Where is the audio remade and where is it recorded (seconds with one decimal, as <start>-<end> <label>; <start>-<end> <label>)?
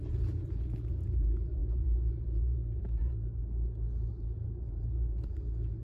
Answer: 0.0-3.4 remade; 3.4-4.1 recorded; 4.1-5.8 remade